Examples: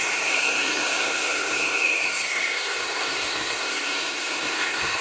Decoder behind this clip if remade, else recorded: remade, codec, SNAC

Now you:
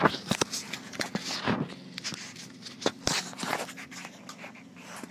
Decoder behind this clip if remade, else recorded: recorded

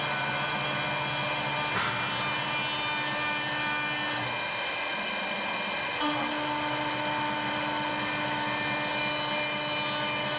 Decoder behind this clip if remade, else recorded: recorded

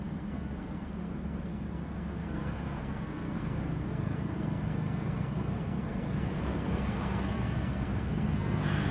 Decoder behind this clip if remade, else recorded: remade, codec, SNAC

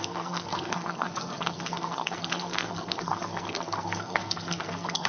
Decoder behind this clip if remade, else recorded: remade, codec, SNAC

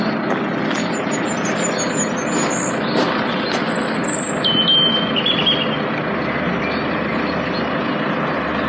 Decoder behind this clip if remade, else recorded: recorded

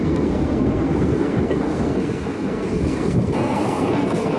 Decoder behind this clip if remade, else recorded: remade, codec, SNAC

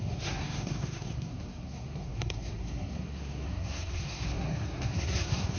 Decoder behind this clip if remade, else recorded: remade, codec, SNAC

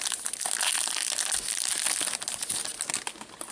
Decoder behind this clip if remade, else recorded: recorded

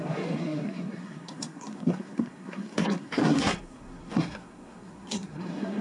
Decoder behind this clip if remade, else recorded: remade, codec, SNAC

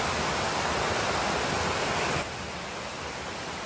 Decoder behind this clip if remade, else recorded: recorded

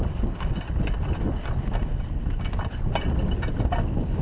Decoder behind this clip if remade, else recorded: recorded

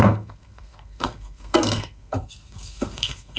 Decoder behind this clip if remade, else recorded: remade, codec, SNAC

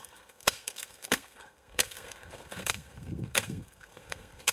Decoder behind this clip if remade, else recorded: remade, codec, SNAC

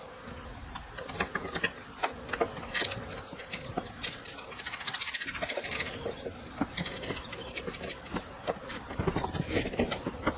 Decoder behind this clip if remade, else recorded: recorded